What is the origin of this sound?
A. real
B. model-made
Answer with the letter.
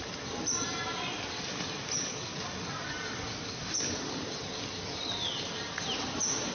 A